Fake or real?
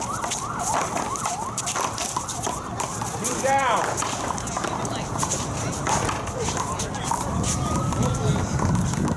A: fake